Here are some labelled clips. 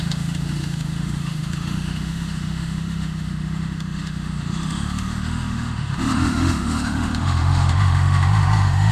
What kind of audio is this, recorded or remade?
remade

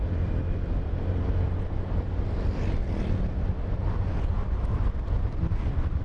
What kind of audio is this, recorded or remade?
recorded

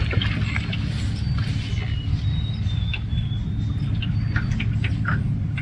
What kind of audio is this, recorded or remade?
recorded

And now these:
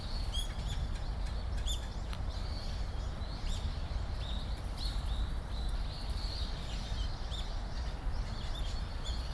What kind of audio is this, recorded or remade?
recorded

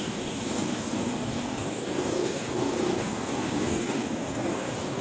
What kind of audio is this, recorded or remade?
remade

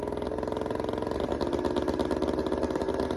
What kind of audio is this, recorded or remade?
recorded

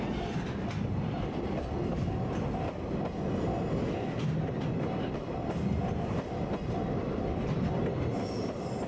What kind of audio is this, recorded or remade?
recorded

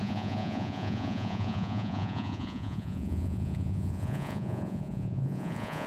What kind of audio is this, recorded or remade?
remade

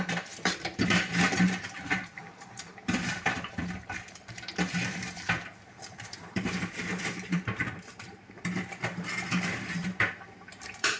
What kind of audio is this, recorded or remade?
remade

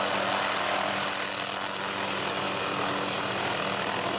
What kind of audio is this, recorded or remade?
recorded